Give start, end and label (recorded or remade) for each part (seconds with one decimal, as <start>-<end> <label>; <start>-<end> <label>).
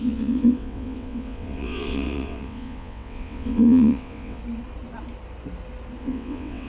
0.0-4.4 remade; 4.4-6.0 recorded; 6.0-6.7 remade